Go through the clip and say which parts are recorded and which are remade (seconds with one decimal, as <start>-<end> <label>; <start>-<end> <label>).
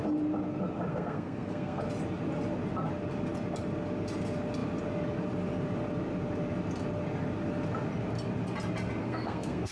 0.0-0.9 recorded; 0.9-1.8 remade; 1.8-9.0 recorded; 9.0-9.7 remade